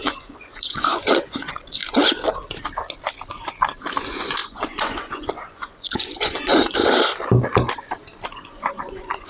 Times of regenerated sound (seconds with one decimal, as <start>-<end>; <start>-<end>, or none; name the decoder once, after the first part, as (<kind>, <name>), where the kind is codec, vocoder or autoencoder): 0.0-1.8 (vocoder, Vocos); 3.9-6.8; 8.3-9.3